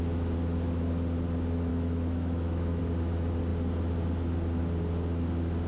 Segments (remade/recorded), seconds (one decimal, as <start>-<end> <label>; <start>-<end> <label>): 0.0-1.7 recorded; 1.7-2.8 remade; 2.8-5.7 recorded